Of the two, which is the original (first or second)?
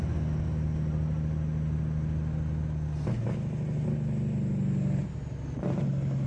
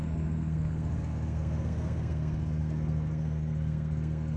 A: first